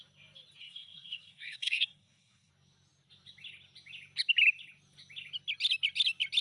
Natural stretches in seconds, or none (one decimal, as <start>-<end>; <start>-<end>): 0.0-0.6; 2.5-6.4